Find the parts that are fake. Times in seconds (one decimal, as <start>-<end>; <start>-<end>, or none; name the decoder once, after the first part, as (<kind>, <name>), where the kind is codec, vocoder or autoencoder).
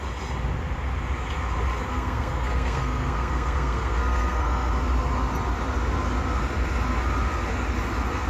1.9-4.7 (codec, SNAC)